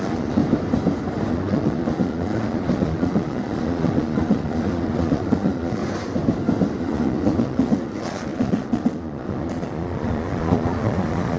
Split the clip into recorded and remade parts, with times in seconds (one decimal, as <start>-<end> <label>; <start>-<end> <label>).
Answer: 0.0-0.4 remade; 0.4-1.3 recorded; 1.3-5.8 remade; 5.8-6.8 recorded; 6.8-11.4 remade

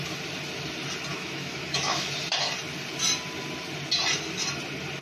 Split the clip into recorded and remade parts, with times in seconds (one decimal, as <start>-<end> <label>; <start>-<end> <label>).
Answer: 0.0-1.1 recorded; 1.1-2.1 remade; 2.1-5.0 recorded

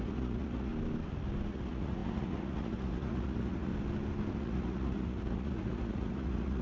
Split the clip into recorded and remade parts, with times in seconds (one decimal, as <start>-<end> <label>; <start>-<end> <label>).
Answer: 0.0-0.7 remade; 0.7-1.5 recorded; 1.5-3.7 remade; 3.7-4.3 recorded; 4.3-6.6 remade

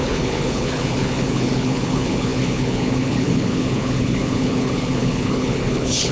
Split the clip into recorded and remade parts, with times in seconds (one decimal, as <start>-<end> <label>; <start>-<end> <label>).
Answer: 0.0-6.1 remade